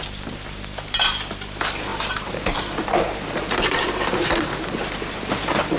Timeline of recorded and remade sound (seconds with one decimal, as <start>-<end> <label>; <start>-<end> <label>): 0.0-1.9 recorded; 1.9-5.8 remade